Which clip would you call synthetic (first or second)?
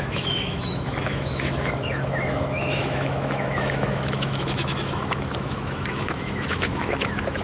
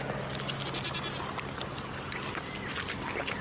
first